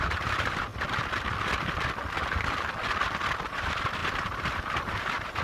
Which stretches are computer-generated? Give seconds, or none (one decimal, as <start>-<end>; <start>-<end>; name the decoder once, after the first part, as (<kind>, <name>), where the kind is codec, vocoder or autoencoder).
0.0-0.7 (vocoder, BigVGAN v2); 3.5-5.4